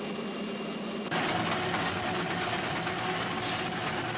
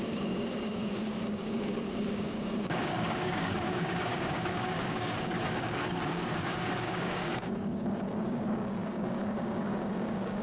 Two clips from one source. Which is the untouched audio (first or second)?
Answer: first